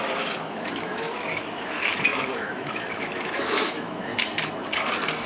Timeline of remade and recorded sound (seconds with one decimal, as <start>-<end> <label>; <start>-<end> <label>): 0.0-4.1 remade; 4.1-5.3 recorded

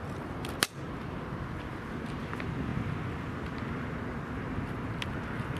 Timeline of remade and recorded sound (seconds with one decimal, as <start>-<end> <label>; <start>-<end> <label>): 0.0-5.6 recorded

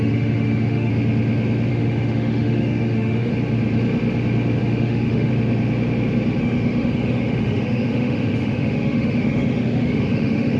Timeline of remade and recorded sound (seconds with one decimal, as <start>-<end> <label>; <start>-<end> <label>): 0.0-0.9 remade; 0.9-1.7 recorded; 1.7-3.3 remade; 3.3-4.6 recorded; 4.6-5.3 remade; 5.3-6.4 recorded; 6.4-10.6 remade

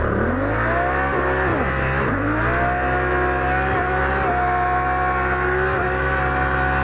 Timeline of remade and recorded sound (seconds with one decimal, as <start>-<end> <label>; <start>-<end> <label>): 0.0-6.8 recorded

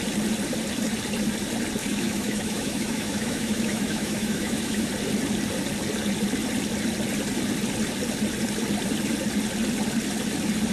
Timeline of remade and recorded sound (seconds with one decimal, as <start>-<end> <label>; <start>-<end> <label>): 0.0-1.8 recorded; 1.8-4.9 remade; 4.9-10.7 recorded

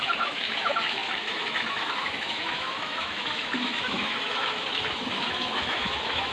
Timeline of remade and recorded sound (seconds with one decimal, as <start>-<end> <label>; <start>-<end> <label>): 0.0-6.3 remade

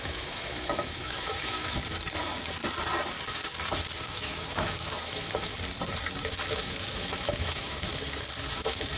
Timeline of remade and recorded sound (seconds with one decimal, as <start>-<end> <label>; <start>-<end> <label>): 0.0-1.8 remade; 1.8-4.0 recorded; 4.0-5.5 remade; 5.5-6.2 recorded; 6.2-7.9 remade; 7.9-8.5 recorded; 8.5-9.0 remade

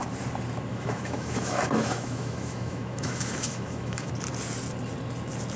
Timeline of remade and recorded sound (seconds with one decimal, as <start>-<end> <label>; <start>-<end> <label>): 0.0-0.7 recorded; 0.7-4.1 remade; 4.1-5.6 recorded